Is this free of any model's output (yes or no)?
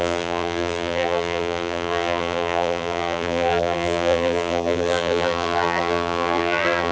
no